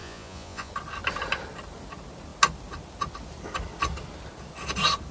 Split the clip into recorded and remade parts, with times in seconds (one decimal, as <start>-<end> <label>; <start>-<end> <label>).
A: 0.0-0.7 remade; 0.7-5.1 recorded